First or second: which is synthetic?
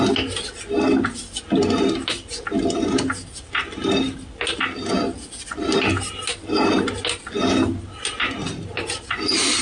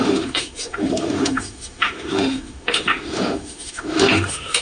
second